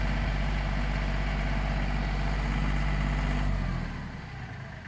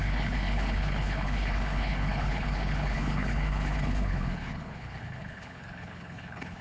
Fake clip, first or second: second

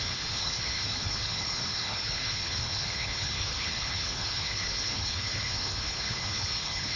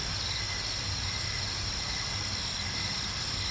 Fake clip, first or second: first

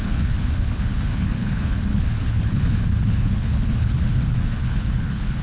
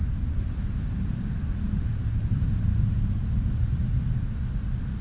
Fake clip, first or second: first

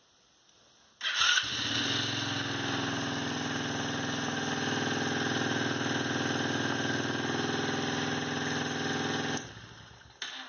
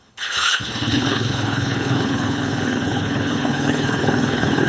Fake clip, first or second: second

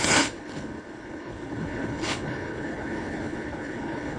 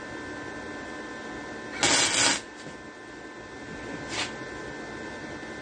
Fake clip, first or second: first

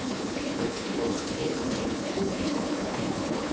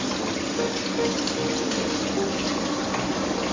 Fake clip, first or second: first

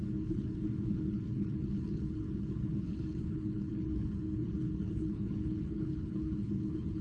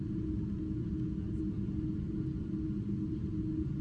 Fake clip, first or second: first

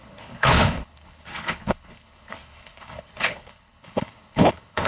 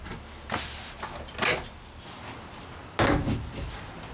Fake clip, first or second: first